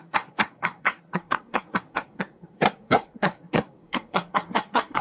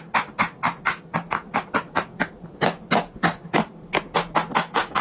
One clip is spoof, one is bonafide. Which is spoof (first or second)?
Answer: first